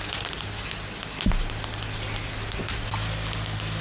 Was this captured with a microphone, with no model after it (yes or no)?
yes